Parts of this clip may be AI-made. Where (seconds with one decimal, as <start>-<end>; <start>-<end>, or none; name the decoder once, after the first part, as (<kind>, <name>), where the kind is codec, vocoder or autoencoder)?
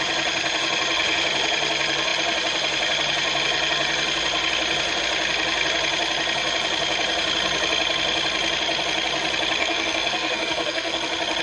9.6-11.0 (codec, SNAC)